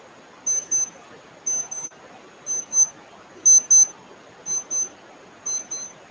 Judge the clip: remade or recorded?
recorded